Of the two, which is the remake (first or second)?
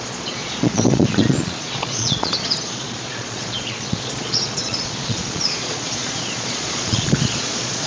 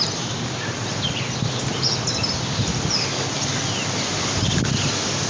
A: first